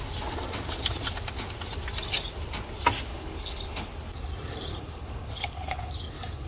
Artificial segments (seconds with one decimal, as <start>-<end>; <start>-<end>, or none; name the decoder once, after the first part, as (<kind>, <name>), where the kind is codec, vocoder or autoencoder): 3.1-3.9 (codec, HILCodec); 4.7-5.9